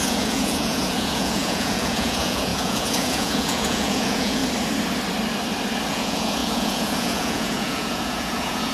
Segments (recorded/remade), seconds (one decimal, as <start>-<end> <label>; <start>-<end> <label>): 0.0-4.4 remade; 4.4-5.9 recorded; 5.9-8.7 remade